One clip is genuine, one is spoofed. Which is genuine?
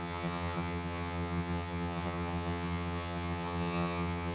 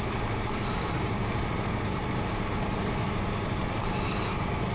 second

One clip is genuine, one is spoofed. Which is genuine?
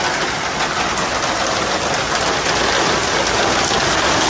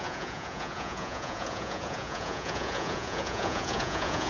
first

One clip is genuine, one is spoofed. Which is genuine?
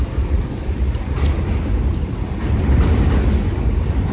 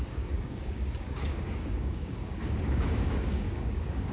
first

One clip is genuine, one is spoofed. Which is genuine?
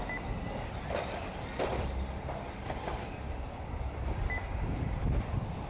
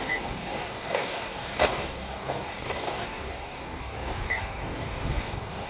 first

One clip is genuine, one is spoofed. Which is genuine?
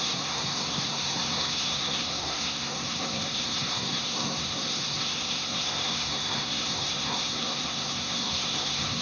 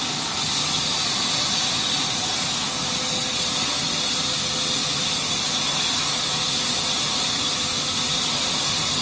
second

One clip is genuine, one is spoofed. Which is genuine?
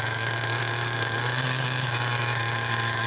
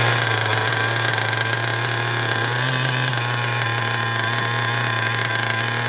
second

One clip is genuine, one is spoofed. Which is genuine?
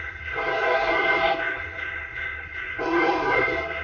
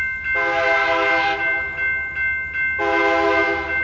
second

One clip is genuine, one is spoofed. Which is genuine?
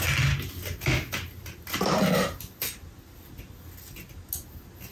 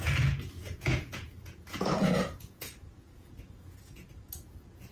first